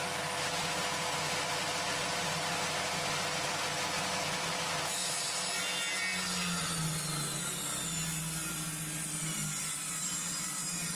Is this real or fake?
real